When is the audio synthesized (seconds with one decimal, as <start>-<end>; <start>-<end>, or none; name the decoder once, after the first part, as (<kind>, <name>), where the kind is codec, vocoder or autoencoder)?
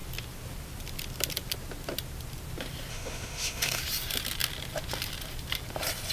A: 2.9-3.8 (autoencoder, DAC-VAE)